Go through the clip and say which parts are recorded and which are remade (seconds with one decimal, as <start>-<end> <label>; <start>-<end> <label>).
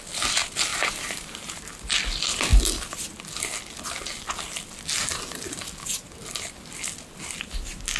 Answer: 0.0-0.7 recorded; 0.7-1.7 remade; 1.7-8.0 recorded